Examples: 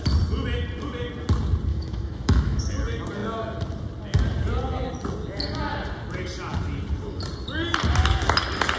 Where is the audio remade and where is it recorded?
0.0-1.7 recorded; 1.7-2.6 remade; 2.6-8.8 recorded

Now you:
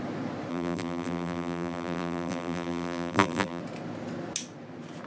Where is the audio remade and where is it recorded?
0.0-0.5 recorded; 0.5-3.6 remade; 3.6-5.1 recorded

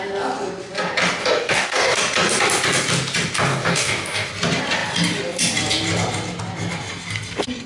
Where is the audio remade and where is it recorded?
0.0-1.2 recorded; 1.2-2.0 remade; 2.0-3.5 recorded; 3.5-4.3 remade; 4.3-7.7 recorded

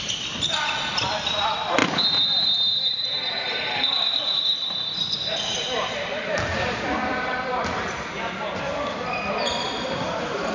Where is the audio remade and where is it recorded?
0.0-1.8 remade; 1.8-3.6 recorded; 3.6-10.5 remade

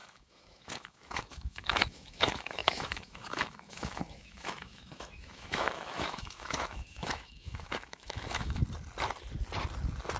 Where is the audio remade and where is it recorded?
0.0-8.6 remade; 8.6-10.2 recorded